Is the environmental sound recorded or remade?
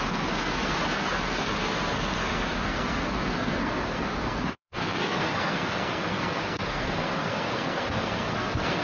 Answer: remade